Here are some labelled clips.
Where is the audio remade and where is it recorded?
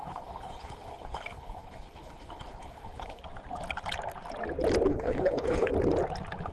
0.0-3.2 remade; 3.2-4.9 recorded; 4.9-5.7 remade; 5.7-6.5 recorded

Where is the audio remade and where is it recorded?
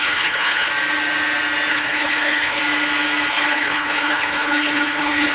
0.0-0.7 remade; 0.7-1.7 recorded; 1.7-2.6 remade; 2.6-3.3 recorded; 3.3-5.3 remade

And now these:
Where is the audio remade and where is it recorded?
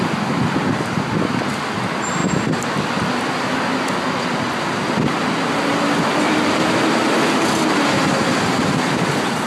0.0-9.5 recorded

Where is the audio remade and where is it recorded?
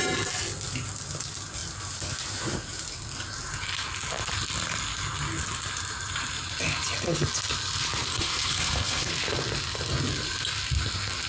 0.0-8.1 recorded; 8.1-9.1 remade; 9.1-11.3 recorded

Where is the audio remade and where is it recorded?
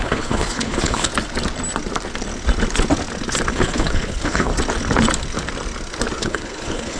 0.0-1.1 remade; 1.1-3.5 recorded; 3.5-4.5 remade; 4.5-6.2 recorded; 6.2-7.0 remade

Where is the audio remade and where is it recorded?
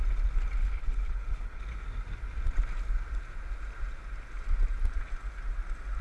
0.0-0.6 recorded; 0.6-1.6 remade; 1.6-6.0 recorded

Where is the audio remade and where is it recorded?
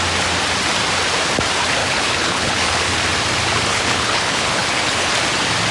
0.0-1.8 recorded; 1.8-2.9 remade; 2.9-3.7 recorded; 3.7-5.1 remade; 5.1-5.7 recorded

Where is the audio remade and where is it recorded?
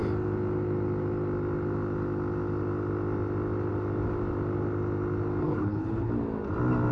0.0-5.4 recorded; 5.4-6.1 remade; 6.1-6.9 recorded